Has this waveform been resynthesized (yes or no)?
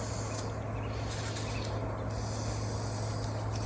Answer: no